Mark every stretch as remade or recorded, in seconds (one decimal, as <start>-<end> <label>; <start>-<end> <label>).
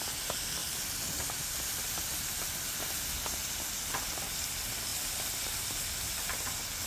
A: 0.0-6.9 recorded